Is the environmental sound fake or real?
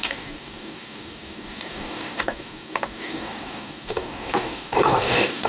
fake